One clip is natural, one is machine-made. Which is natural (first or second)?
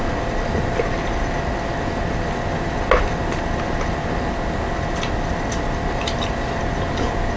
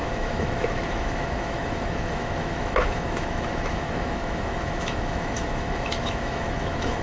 first